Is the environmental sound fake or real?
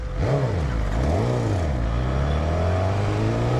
real